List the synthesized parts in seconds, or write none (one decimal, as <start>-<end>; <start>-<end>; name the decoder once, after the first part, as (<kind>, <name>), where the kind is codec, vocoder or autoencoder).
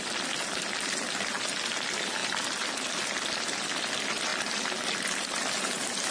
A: none